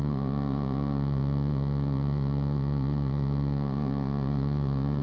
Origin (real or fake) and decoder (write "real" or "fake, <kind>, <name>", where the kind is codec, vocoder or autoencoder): fake, vocoder, Vocos